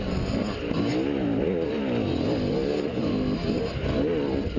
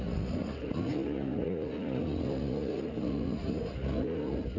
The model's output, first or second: second